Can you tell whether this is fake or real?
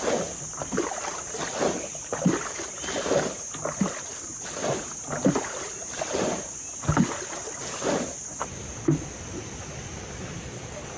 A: real